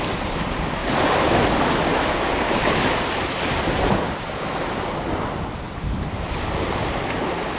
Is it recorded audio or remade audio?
recorded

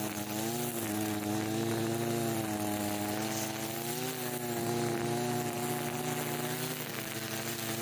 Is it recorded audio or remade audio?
recorded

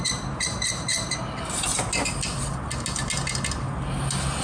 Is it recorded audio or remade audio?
recorded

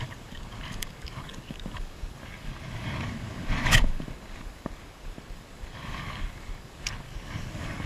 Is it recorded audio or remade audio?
remade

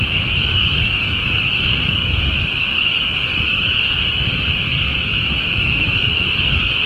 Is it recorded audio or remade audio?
remade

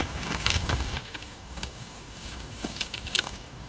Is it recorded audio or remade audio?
remade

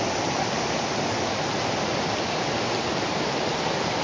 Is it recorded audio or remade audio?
recorded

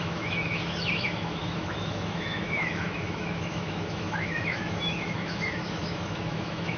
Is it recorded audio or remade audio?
remade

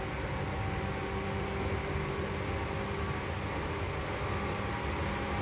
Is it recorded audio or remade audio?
recorded